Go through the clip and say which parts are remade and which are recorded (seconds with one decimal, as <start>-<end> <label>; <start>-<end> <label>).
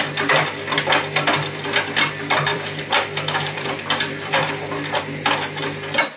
0.0-2.5 recorded; 2.5-5.0 remade; 5.0-6.2 recorded